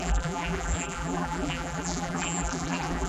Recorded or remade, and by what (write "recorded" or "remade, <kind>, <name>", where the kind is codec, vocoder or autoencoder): remade, vocoder, BigVGAN v2